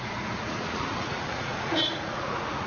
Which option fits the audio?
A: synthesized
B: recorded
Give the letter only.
A